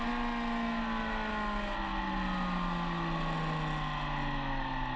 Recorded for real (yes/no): yes